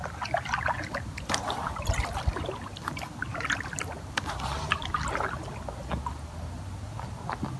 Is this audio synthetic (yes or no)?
no